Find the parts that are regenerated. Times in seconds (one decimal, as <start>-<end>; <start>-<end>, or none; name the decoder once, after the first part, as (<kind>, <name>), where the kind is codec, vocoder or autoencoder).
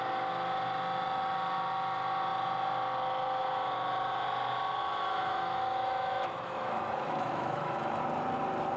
4.8-8.0 (autoencoder, DAC-VAE)